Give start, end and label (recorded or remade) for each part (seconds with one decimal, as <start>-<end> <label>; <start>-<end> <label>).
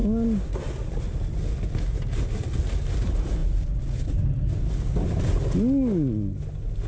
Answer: 0.0-6.9 recorded